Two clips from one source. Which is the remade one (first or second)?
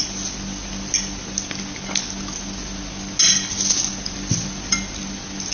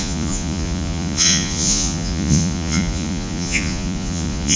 second